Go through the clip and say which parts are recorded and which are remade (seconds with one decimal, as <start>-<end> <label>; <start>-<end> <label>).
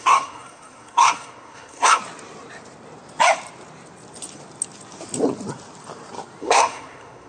0.0-2.0 remade; 2.0-6.4 recorded; 6.4-7.3 remade